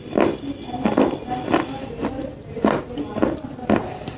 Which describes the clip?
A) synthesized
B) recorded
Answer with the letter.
A